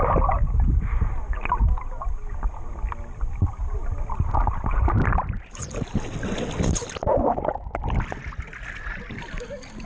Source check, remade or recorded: recorded